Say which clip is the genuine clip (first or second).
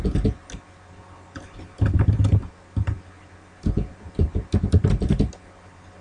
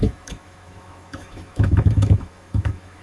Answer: first